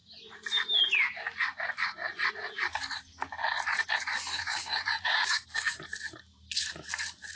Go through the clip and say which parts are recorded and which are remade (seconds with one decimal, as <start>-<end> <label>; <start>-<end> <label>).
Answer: 0.0-4.4 recorded; 4.4-5.8 remade; 5.8-7.4 recorded